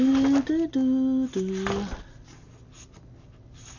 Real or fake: real